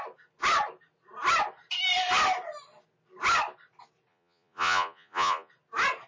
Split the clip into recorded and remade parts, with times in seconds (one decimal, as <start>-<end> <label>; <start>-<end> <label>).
0.0-4.1 recorded; 4.1-5.5 remade; 5.5-6.1 recorded